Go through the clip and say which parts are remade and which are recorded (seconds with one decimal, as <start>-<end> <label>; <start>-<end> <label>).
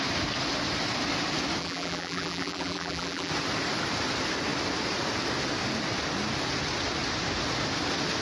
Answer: 0.0-1.6 recorded; 1.6-3.3 remade; 3.3-8.2 recorded